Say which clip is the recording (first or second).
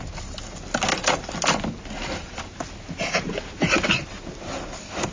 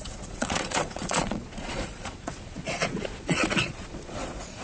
first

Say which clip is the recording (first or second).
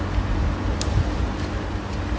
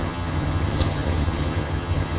first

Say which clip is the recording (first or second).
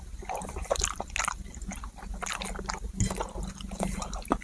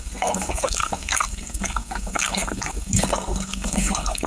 first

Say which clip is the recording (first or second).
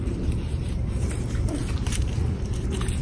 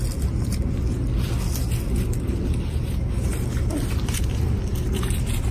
second